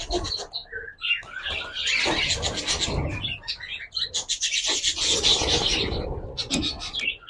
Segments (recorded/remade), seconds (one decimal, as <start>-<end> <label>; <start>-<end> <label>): 0.0-7.3 recorded